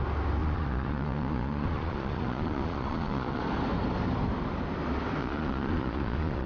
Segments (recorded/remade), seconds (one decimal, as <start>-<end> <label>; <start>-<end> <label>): 0.0-0.4 recorded; 0.4-3.4 remade; 3.4-5.2 recorded; 5.2-6.5 remade